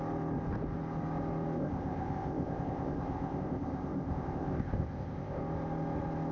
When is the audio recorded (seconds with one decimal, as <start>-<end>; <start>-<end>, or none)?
0.0-1.6; 5.4-6.3